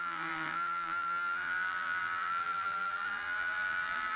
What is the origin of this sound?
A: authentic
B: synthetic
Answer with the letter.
B